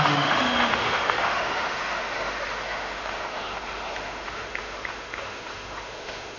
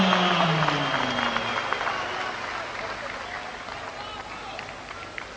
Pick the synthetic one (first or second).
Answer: first